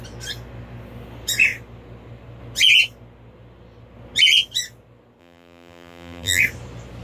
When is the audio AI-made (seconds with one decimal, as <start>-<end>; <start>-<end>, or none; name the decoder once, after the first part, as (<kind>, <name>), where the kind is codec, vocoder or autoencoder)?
5.2-6.4 (vocoder, BigVGAN v2)